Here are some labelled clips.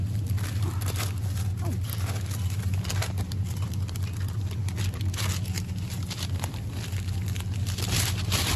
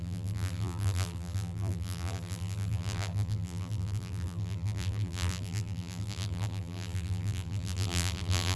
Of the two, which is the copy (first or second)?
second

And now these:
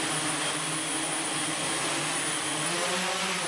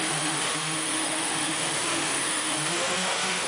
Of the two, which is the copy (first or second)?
second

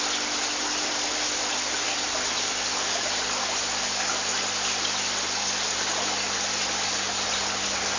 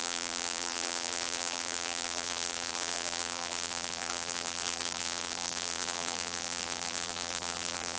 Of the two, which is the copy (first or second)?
second